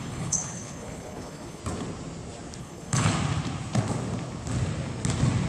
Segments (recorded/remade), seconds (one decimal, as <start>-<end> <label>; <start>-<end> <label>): 0.0-1.6 remade; 1.6-2.6 recorded; 2.6-3.1 remade; 3.1-5.5 recorded

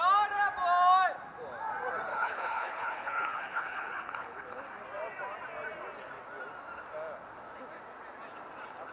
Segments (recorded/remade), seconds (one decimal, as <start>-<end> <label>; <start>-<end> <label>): 0.0-2.1 recorded; 2.1-4.6 remade; 4.6-8.9 recorded

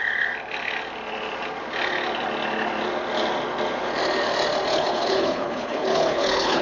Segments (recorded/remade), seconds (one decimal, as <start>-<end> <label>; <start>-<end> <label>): 0.0-4.7 recorded; 4.7-6.6 remade

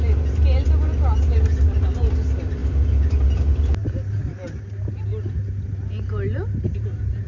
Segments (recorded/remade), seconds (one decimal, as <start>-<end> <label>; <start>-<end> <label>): 0.0-7.3 recorded

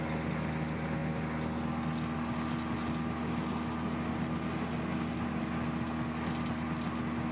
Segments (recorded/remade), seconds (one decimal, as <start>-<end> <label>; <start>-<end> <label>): 0.0-7.3 recorded